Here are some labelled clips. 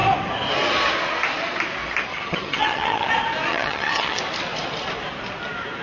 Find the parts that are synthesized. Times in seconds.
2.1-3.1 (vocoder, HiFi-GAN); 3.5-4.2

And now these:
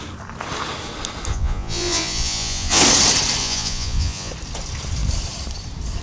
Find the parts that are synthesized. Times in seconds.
1.3-2.8 (vocoder, Vocos); 3.4-4.3

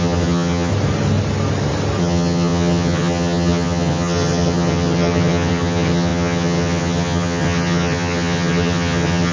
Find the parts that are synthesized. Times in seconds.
0.0-0.7 (vocoder, HiFi-GAN); 2.0-9.3